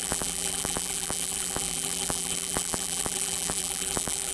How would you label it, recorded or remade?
remade